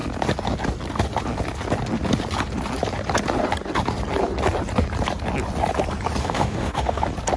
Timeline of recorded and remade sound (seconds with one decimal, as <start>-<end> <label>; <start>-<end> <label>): 0.0-6.2 recorded; 6.2-7.0 remade; 7.0-7.4 recorded